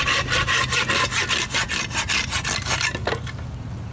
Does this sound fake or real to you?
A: real